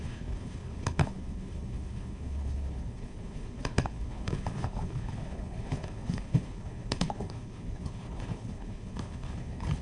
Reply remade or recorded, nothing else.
remade